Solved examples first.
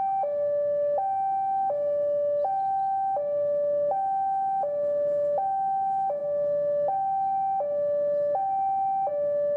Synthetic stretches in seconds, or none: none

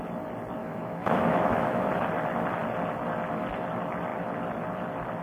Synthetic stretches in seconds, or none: 0.6-1.9 (autoencoder, DAC-VAE)

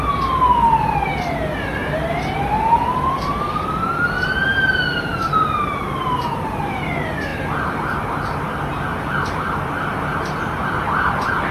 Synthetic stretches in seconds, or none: none